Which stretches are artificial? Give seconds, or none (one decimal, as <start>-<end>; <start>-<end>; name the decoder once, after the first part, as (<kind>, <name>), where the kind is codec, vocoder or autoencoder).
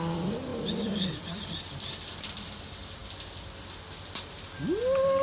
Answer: 0.5-1.5 (vocoder, BigVGAN v2)